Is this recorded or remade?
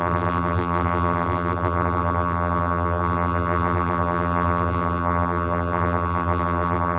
remade